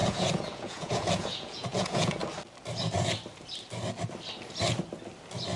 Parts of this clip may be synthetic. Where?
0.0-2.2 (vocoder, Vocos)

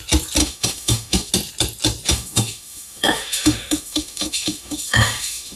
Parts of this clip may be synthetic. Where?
0.4-1.3 (autoencoder, DAC-VAE); 2.1-5.6

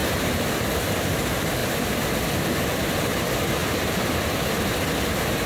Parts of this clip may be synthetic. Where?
none

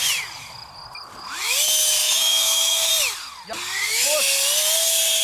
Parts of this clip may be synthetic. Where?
2.0-2.9 (autoencoder, DAC-VAE)